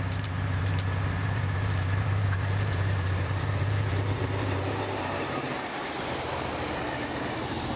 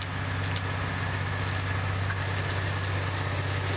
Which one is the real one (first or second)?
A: second